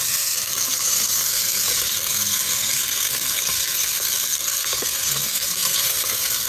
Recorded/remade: remade